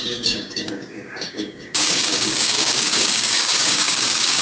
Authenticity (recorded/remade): remade